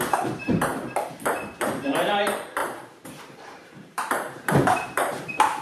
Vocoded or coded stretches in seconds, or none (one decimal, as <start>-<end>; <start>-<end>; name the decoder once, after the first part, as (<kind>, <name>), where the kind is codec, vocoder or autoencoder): 0.0-0.7 (vocoder, BigVGAN v2); 1.3-5.6